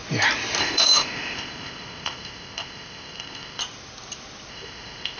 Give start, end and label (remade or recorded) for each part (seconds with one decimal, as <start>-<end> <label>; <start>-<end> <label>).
0.0-0.6 recorded; 0.6-3.6 remade; 3.6-4.5 recorded; 4.5-5.2 remade

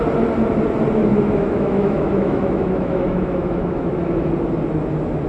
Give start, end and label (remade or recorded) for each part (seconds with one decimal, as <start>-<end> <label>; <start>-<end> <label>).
0.0-1.1 recorded; 1.1-4.3 remade; 4.3-5.3 recorded

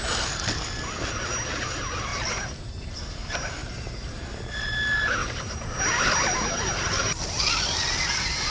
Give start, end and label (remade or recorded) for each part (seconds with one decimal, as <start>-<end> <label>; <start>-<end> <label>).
0.0-2.1 recorded; 2.1-2.9 remade; 2.9-3.6 recorded; 3.6-4.6 remade; 4.6-5.2 recorded; 5.2-5.8 remade; 5.8-8.5 recorded

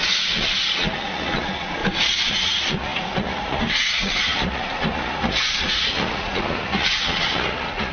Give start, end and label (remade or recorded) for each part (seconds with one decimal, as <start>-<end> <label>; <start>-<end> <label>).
0.0-1.8 remade; 1.8-2.3 recorded; 2.3-7.9 remade

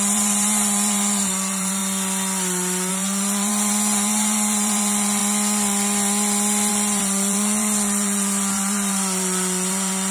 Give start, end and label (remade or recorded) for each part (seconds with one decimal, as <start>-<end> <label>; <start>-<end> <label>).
0.0-1.8 remade; 1.8-2.9 recorded; 2.9-5.2 remade; 5.2-6.7 recorded; 6.7-10.1 remade

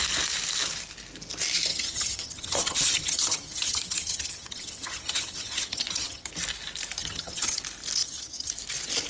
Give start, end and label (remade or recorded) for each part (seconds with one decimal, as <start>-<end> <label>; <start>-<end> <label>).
0.0-1.7 recorded; 1.7-6.3 remade; 6.3-7.0 recorded; 7.0-7.6 remade; 7.6-8.0 recorded; 8.0-8.5 remade; 8.5-9.1 recorded

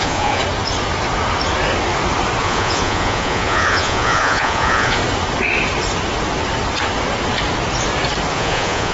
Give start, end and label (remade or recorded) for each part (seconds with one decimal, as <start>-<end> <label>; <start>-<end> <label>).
0.0-0.4 remade; 0.4-2.4 recorded; 2.4-5.0 remade; 5.0-8.3 recorded; 8.3-8.9 remade